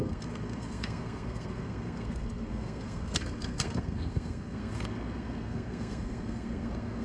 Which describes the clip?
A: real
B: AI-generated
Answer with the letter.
B